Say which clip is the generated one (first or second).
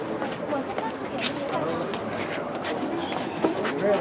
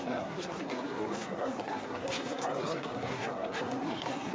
second